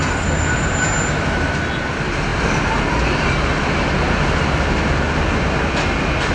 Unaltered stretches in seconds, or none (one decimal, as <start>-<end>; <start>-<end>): 0.0-6.3